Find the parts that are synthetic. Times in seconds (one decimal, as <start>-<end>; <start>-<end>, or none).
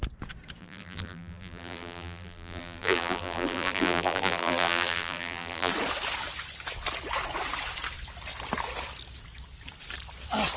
0.6-5.7